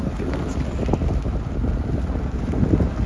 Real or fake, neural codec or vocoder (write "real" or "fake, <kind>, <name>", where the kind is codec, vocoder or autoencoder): real